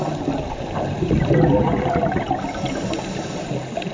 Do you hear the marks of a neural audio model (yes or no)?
no